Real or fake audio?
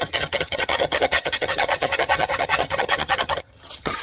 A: fake